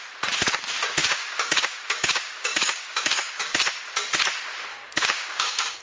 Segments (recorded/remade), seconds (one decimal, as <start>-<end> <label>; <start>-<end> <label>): 0.0-1.0 recorded; 1.0-3.4 remade; 3.4-4.7 recorded; 4.7-5.8 remade

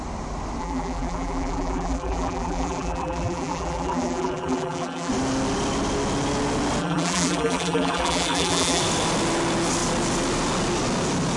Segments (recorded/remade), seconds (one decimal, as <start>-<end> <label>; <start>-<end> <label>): 0.0-0.6 recorded; 0.6-5.1 remade; 5.1-6.8 recorded; 6.8-8.8 remade; 8.8-11.4 recorded

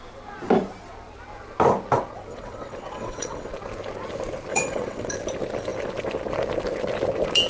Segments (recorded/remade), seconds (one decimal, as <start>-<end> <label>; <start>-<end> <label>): 0.0-2.3 recorded; 2.3-3.5 remade; 3.5-4.5 recorded; 4.5-5.1 remade; 5.1-7.5 recorded

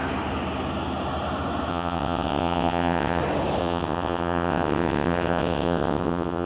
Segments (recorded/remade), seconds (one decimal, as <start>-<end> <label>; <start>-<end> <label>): 0.0-1.7 recorded; 1.7-3.2 remade; 3.2-3.6 recorded; 3.6-6.5 remade

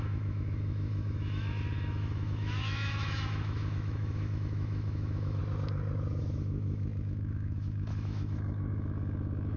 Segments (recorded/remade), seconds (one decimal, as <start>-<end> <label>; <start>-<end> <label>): 0.0-5.4 remade; 5.4-6.2 recorded; 6.2-9.6 remade

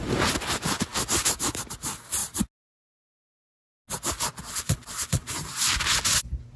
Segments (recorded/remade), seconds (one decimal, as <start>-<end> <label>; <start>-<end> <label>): 0.0-5.2 recorded; 5.2-5.8 remade; 5.8-6.6 recorded

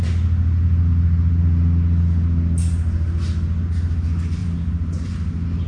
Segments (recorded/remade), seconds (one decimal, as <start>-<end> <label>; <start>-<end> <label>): 0.0-4.4 recorded; 4.4-5.7 remade

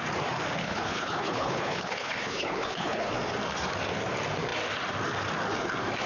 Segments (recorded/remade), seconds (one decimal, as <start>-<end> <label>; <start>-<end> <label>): 0.0-0.6 recorded; 0.6-3.1 remade; 3.1-6.1 recorded